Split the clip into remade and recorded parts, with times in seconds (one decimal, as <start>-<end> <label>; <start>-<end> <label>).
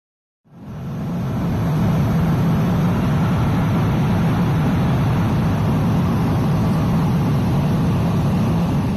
0.0-2.0 recorded; 2.0-9.0 remade